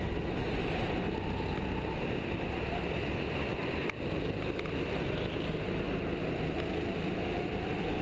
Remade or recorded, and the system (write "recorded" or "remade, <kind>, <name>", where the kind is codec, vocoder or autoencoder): recorded